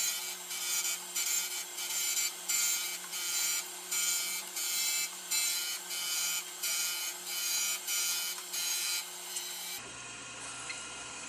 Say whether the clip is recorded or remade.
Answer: remade